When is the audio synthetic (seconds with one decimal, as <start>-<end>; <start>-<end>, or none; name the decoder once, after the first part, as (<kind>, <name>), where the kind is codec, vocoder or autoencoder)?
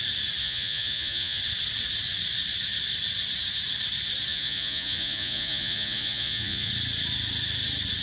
0.4-1.4 (vocoder, Vocos); 4.3-6.7